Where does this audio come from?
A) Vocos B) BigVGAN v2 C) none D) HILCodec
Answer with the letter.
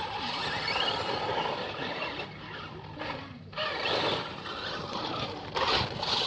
B